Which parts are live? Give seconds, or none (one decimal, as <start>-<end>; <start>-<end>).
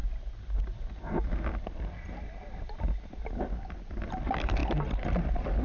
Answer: 0.0-5.6